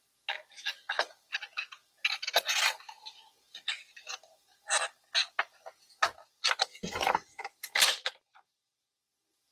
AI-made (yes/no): no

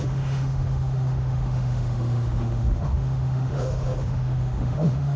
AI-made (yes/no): yes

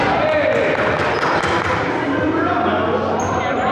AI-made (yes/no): no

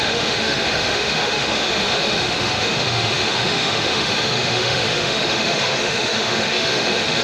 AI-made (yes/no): yes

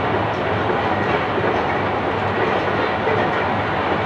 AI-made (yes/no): no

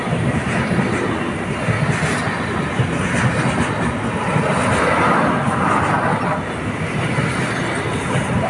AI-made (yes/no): no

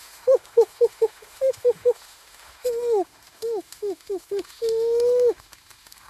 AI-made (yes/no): yes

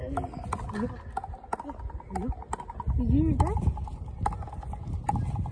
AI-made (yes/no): no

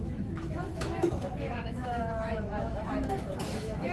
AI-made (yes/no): yes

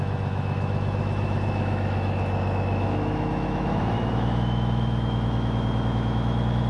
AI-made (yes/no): yes